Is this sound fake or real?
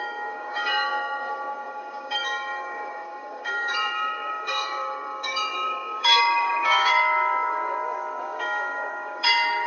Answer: fake